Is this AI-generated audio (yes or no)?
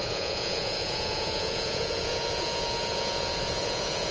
yes